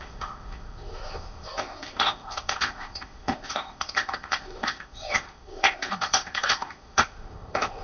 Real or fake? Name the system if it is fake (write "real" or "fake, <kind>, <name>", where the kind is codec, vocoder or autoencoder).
fake, codec, ZipCodec